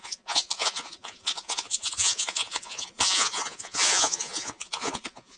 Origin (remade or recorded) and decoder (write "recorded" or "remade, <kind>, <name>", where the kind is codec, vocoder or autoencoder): remade, vocoder, Vocos